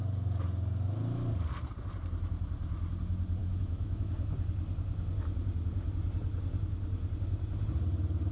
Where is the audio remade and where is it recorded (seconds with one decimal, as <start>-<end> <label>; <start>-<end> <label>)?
0.0-3.4 recorded; 3.4-4.1 remade; 4.1-8.3 recorded